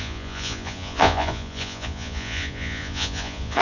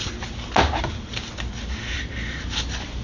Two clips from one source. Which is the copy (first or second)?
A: first